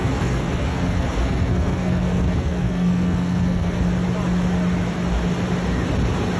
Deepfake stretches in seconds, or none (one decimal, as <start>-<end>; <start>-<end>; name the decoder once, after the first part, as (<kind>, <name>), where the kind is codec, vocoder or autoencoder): 0.0-3.8 (codec, SNAC)